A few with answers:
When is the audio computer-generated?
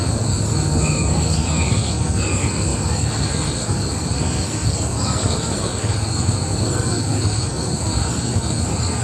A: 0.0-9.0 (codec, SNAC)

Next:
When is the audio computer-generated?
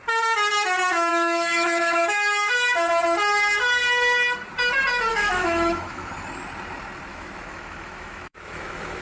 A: 1.1-2.5 (autoencoder, DAC-VAE); 5.1-6.1; 7.1-9.0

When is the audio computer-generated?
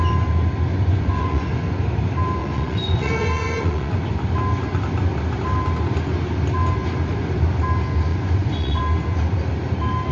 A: 0.7-1.5 (vocoder, Vocos); 2.4-4.0; 8.1-8.8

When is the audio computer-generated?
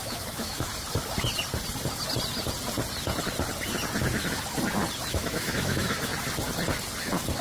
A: 0.0-0.7 (autoencoder, DAC-VAE); 5.1-6.1